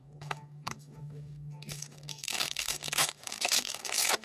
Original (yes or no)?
no